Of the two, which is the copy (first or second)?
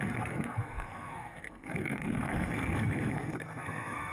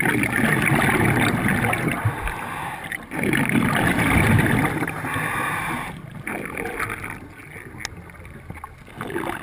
first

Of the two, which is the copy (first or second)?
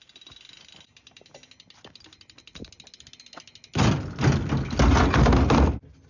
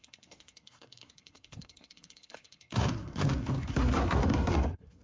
second